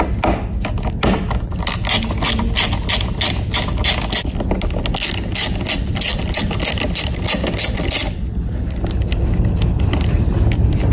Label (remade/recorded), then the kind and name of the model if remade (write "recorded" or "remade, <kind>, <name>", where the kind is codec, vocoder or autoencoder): recorded